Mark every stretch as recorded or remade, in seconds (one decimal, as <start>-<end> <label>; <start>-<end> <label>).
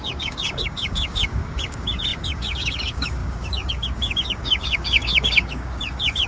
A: 0.0-6.3 remade